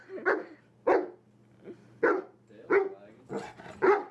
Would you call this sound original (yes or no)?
yes